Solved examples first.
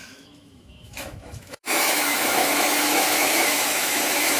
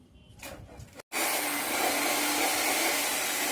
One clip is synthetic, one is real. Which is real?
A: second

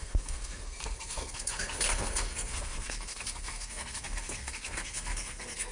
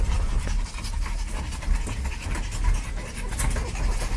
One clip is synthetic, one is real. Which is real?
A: second